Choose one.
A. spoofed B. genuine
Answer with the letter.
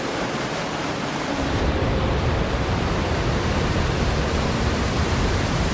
A